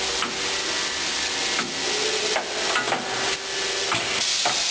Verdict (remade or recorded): recorded